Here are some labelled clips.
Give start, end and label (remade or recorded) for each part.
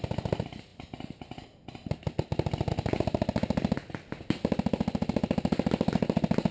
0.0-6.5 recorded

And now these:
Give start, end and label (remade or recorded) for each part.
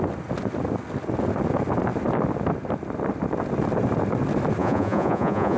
0.0-4.6 recorded; 4.6-5.6 remade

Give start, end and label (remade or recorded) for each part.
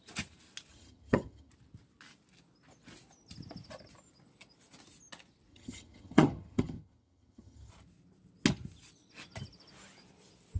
0.0-0.7 recorded; 0.7-1.5 remade; 1.5-5.5 recorded; 5.5-7.7 remade; 7.7-10.6 recorded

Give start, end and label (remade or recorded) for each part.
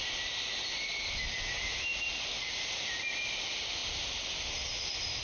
0.0-5.2 recorded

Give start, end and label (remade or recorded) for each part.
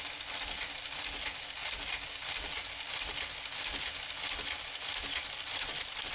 0.0-6.1 recorded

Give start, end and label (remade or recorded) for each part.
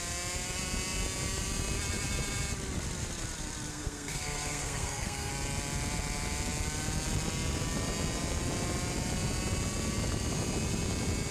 0.0-3.7 recorded; 3.7-5.3 remade; 5.3-11.3 recorded